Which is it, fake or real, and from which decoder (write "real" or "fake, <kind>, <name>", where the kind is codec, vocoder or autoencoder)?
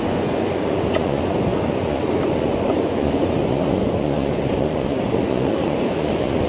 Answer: fake, vocoder, Vocos